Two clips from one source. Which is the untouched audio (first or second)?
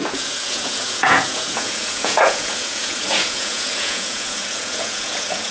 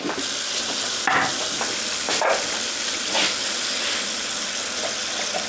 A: second